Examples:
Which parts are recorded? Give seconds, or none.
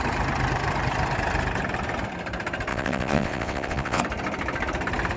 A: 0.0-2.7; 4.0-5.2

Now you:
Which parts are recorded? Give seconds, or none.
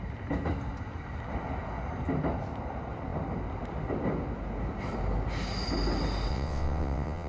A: 0.0-6.3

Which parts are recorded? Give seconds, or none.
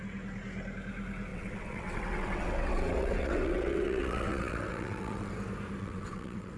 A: 0.0-1.3; 5.3-5.8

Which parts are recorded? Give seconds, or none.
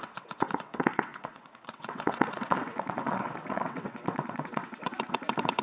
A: none